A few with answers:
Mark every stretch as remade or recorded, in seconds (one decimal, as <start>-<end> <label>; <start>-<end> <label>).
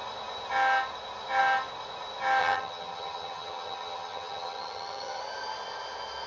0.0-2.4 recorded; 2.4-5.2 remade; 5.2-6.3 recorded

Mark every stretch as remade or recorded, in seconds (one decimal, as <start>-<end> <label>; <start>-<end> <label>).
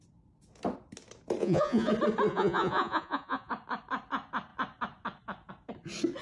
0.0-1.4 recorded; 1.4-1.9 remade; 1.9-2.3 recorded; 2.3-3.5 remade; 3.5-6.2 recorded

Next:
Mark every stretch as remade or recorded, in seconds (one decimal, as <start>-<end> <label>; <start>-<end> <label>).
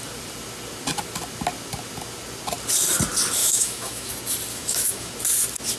0.0-3.4 recorded; 3.4-4.1 remade; 4.1-4.5 recorded; 4.5-5.1 remade; 5.1-5.8 recorded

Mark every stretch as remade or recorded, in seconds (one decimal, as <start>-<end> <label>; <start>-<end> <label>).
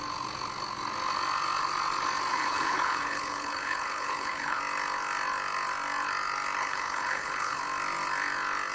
0.0-2.3 recorded; 2.3-4.6 remade; 4.6-6.6 recorded; 6.6-7.6 remade; 7.6-8.7 recorded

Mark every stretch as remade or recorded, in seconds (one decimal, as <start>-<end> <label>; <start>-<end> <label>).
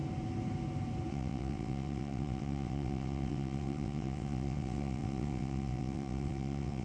0.0-1.1 recorded; 1.1-6.8 remade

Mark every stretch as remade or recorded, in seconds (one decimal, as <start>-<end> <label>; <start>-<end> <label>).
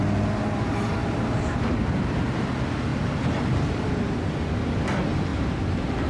0.0-1.0 recorded; 1.0-2.4 remade; 2.4-2.9 recorded; 2.9-4.4 remade; 4.4-5.3 recorded; 5.3-6.1 remade